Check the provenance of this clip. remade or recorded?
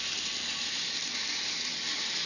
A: recorded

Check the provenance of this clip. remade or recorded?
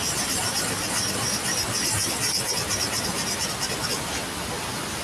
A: recorded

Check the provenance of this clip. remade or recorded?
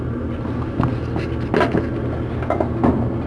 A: recorded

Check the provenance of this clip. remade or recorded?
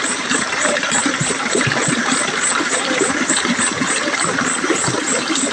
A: remade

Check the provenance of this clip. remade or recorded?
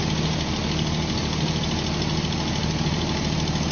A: recorded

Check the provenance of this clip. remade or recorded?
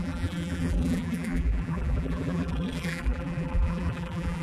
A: remade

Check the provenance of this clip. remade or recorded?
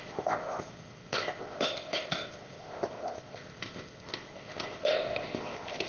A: remade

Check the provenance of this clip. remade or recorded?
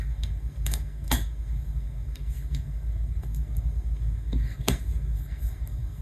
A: remade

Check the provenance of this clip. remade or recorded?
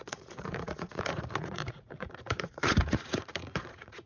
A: remade